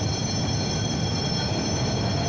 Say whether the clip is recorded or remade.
recorded